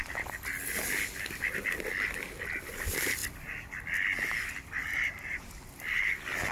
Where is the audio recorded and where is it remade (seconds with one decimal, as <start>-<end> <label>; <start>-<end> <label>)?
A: 0.0-4.8 recorded; 4.8-5.5 remade; 5.5-6.5 recorded